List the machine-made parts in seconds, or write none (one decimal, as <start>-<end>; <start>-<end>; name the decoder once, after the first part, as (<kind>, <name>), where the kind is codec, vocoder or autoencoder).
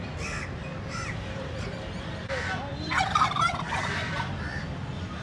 0.7-1.6 (vocoder, BigVGAN v2); 2.7-4.4